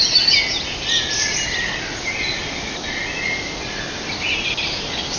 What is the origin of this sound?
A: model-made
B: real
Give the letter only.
B